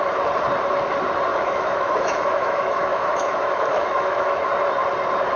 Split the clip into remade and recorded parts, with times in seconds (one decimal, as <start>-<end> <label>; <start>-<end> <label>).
0.0-1.3 recorded; 1.3-4.3 remade; 4.3-5.4 recorded